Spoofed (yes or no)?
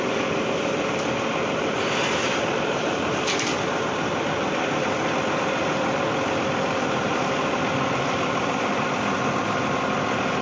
no